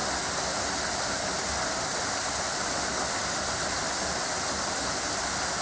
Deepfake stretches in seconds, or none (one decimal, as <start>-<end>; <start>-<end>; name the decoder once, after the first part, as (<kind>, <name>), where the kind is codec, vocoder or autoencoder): none